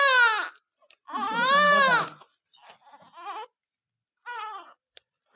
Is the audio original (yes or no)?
yes